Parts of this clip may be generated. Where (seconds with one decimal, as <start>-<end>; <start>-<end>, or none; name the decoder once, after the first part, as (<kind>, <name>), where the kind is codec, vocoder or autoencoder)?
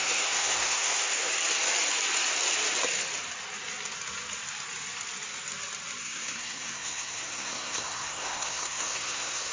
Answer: 0.0-1.3 (codec, SNAC); 6.0-9.5